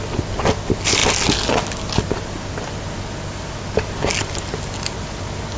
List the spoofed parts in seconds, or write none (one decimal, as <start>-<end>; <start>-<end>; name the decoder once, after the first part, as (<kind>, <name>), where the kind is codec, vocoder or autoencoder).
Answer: none